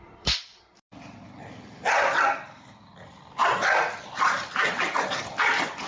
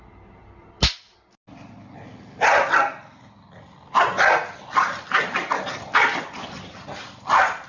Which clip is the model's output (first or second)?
first